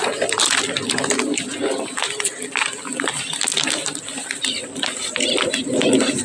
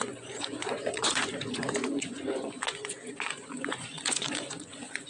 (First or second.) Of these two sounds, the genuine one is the first